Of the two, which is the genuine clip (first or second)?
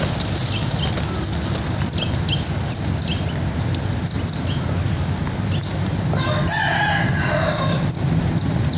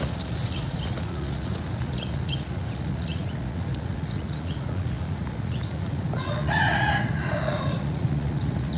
first